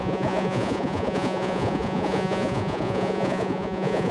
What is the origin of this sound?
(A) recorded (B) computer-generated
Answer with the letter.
B